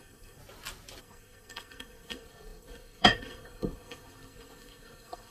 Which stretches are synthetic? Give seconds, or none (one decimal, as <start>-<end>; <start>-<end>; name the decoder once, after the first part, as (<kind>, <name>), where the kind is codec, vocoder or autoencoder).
0.0-0.4 (codec, SNAC); 1.0-5.3